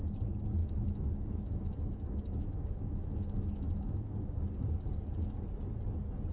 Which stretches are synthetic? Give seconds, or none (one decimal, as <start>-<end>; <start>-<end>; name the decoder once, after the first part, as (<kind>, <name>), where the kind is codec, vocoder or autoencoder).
0.6-4.4 (autoencoder, DAC-VAE)